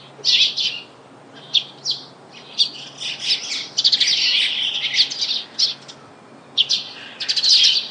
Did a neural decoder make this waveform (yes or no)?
no